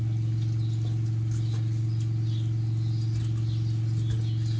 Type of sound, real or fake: real